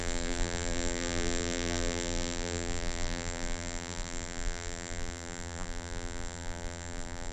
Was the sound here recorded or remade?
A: remade